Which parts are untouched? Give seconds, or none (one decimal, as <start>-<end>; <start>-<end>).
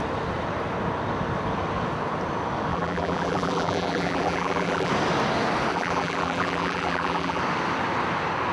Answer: 0.0-2.7; 4.9-5.7; 7.4-8.5